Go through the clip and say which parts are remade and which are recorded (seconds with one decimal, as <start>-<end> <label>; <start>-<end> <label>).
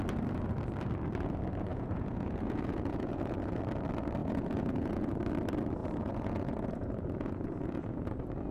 0.0-1.7 recorded; 1.7-3.6 remade; 3.6-4.2 recorded; 4.2-5.2 remade; 5.2-5.8 recorded; 5.8-8.1 remade; 8.1-8.5 recorded